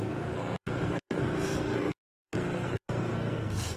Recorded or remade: remade